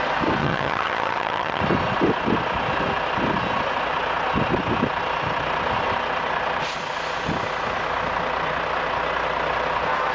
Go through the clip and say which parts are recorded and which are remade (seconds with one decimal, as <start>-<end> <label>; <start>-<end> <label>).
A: 0.0-0.4 recorded; 0.4-1.6 remade; 1.6-10.1 recorded